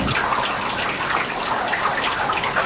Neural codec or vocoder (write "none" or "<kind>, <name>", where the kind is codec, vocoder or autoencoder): none